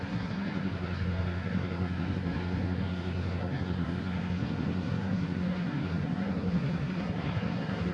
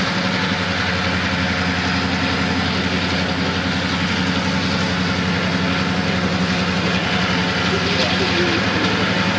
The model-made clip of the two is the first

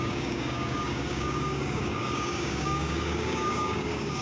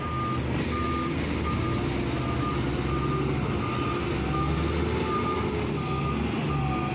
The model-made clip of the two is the first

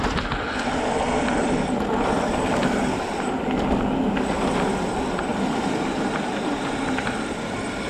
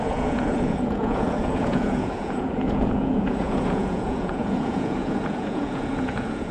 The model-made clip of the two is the second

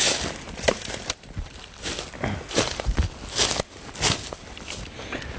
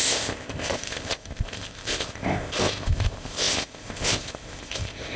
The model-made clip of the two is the second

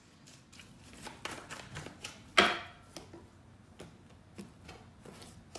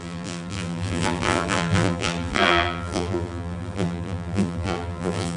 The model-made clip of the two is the second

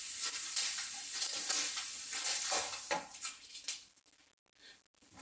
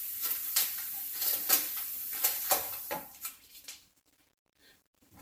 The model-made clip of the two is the second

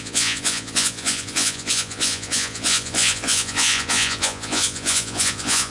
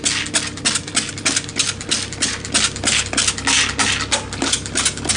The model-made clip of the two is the first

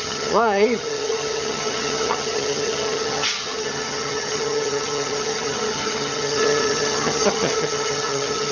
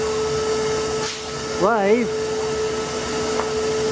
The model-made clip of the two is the first